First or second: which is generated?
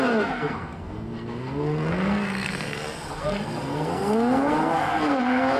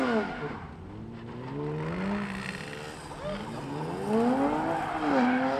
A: first